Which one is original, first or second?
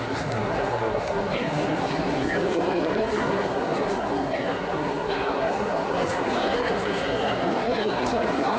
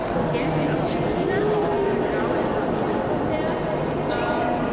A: second